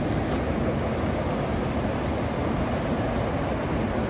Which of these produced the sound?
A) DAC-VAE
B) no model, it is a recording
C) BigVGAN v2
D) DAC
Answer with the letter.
B